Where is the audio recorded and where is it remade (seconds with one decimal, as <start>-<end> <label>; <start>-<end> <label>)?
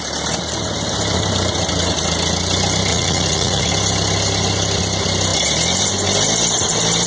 0.0-2.9 recorded; 2.9-3.7 remade; 3.7-7.1 recorded